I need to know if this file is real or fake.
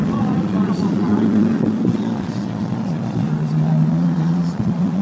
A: fake